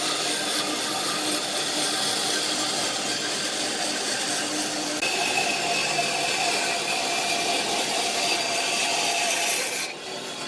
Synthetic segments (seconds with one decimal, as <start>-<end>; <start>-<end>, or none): none